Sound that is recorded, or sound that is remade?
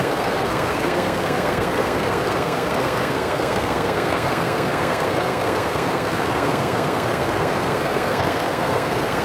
remade